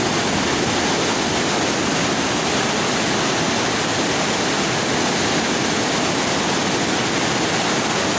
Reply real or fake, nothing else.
real